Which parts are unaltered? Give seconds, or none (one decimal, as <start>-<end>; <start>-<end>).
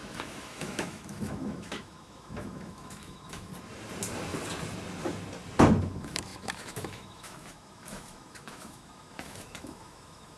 3.5-5.8